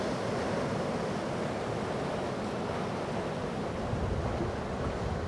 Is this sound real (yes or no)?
yes